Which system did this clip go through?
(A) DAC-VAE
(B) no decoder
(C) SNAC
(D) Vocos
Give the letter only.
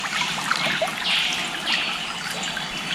B